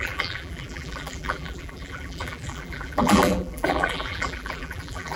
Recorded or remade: remade